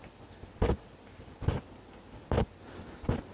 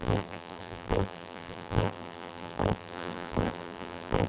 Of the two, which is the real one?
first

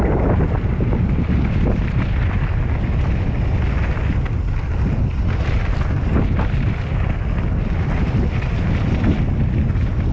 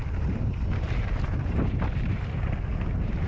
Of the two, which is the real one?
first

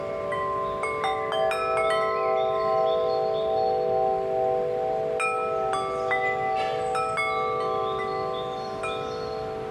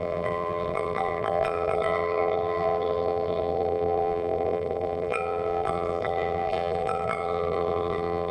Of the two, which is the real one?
first